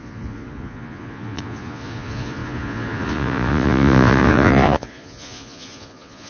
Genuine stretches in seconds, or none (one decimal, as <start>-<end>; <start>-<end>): none